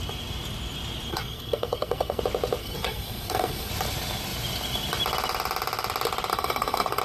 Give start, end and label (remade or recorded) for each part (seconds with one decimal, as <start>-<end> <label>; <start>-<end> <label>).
0.0-1.1 recorded; 1.1-2.2 remade; 2.2-2.6 recorded; 2.6-3.7 remade; 3.7-6.3 recorded; 6.3-7.0 remade